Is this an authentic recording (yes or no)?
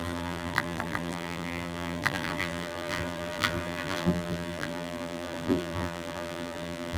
no